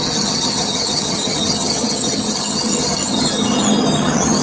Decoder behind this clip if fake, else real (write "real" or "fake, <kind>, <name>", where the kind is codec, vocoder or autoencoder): fake, vocoder, HiFi-GAN